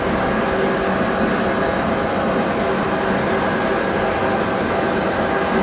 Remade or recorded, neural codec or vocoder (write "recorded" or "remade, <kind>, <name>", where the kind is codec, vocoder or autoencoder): recorded